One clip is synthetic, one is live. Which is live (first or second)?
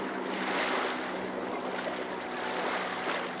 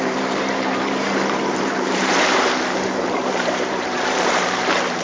first